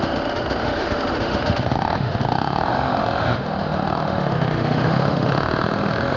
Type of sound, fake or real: fake